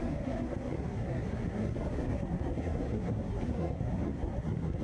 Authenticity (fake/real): fake